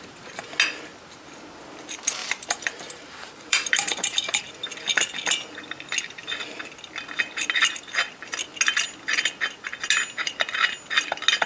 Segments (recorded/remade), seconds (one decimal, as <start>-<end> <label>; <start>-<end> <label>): 0.0-2.2 recorded; 2.2-4.5 remade; 4.5-11.5 recorded